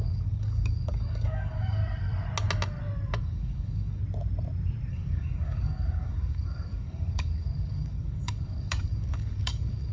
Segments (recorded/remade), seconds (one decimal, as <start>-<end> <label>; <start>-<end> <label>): 0.0-1.8 remade; 1.8-3.2 recorded; 3.2-4.0 remade; 4.0-4.9 recorded; 4.9-9.9 remade